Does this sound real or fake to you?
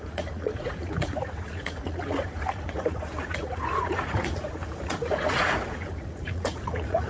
fake